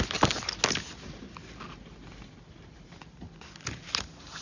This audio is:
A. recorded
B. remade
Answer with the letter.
A